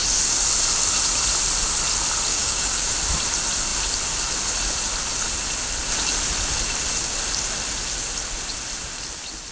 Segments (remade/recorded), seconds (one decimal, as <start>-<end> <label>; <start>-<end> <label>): 0.0-2.3 recorded; 2.3-2.9 remade; 2.9-9.5 recorded